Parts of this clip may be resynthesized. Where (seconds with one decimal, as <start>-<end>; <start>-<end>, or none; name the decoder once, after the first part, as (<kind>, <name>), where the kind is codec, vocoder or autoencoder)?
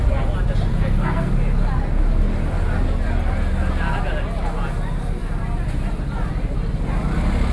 0.7-1.3 (codec, SNAC)